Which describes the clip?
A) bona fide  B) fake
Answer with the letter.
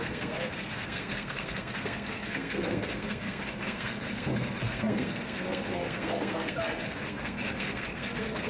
B